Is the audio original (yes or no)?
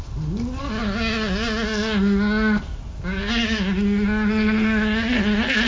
yes